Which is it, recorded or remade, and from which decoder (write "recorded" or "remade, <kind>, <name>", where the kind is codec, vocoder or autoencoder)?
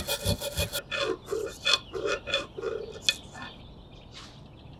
recorded